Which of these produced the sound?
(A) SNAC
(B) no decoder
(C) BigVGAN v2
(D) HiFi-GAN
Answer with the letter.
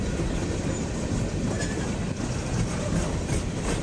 C